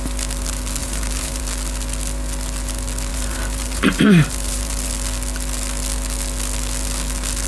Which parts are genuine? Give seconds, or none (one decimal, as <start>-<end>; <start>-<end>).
0.0-0.8; 1.4-3.1; 4.9-7.5